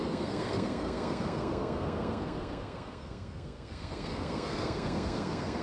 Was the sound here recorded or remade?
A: remade